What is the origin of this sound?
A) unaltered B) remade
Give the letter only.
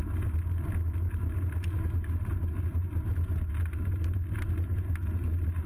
A